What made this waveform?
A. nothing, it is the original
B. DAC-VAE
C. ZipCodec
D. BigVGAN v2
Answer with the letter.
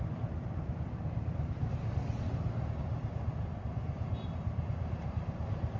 A